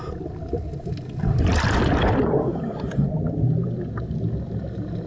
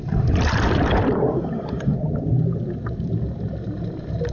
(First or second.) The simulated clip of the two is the second